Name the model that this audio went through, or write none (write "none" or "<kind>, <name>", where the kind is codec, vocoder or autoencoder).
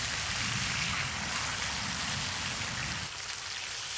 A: none